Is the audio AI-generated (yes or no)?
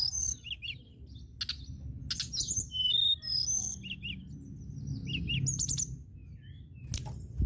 no